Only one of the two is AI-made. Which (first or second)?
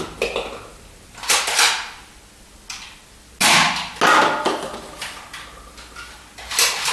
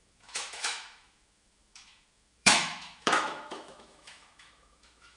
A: second